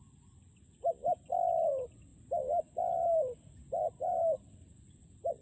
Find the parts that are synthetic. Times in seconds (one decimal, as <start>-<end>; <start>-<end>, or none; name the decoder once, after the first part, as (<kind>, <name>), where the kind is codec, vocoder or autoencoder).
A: none